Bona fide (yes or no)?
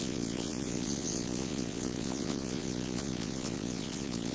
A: no